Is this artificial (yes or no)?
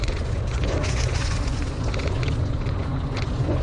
yes